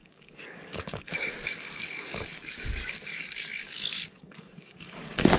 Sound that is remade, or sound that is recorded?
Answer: remade